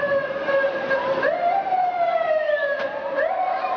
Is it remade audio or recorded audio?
remade